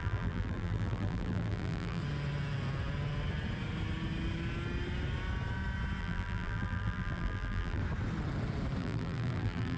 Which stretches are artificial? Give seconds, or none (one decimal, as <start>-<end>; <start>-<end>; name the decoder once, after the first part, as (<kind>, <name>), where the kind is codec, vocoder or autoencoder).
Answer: 0.0-2.0 (vocoder, BigVGAN v2); 6.0-7.8; 8.8-9.8